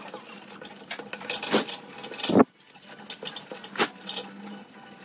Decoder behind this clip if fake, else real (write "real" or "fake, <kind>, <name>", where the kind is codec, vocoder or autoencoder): real